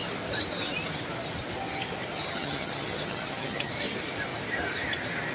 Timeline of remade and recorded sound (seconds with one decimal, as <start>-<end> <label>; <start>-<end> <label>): 0.0-2.1 recorded; 2.1-3.7 remade; 3.7-5.3 recorded